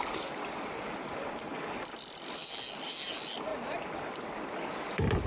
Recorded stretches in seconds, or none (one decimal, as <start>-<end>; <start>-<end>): 0.0-3.5; 4.8-5.3